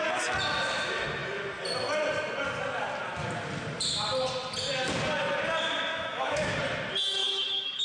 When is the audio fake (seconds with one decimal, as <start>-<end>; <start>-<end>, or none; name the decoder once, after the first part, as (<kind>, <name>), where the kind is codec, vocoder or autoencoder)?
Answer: 5.9-6.6 (autoencoder, DAC-VAE); 7.2-7.8